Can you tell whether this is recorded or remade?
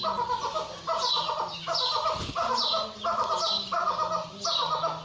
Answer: recorded